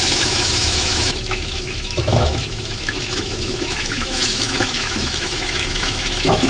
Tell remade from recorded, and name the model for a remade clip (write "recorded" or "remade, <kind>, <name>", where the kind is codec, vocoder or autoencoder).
remade, autoencoder, DAC-VAE